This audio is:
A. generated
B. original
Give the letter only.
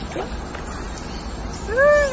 B